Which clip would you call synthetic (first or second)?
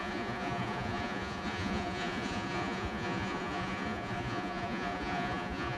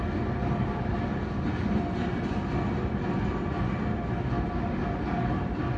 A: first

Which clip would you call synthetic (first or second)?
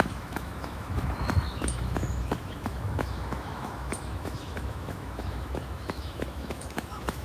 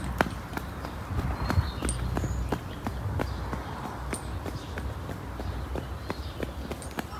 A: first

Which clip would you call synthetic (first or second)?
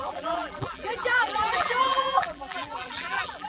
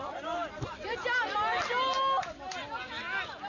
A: first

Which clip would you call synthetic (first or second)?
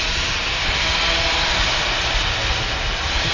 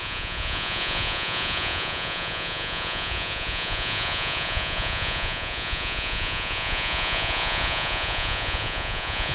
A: second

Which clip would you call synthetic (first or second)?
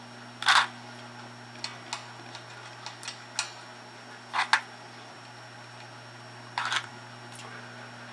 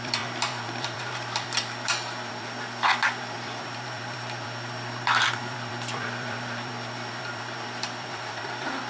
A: second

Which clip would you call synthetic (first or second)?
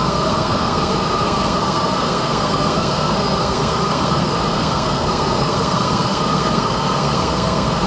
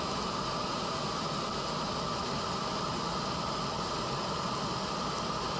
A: first